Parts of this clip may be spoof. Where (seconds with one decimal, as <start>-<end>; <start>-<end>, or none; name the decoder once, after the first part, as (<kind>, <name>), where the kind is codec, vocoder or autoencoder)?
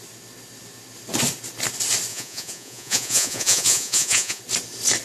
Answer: 2.1-4.4 (vocoder, Vocos)